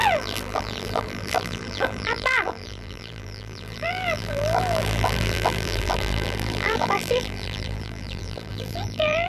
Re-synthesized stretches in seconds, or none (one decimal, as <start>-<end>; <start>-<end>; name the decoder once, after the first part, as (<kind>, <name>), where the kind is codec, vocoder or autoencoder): 0.0-9.3 (vocoder, BigVGAN v2)